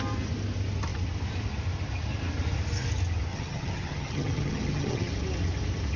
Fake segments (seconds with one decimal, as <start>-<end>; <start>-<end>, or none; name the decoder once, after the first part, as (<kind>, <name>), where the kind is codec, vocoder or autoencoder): 3.3-5.1 (vocoder, HiFi-GAN)